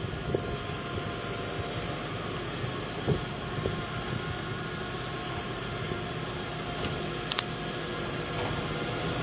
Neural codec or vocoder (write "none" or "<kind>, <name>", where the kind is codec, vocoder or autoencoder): none